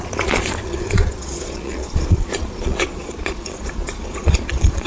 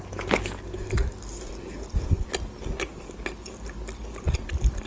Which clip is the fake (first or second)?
first